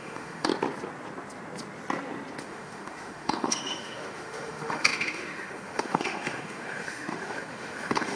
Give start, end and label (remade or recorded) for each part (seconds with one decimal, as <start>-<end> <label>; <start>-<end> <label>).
0.0-0.5 remade; 0.5-2.4 recorded; 2.4-8.2 remade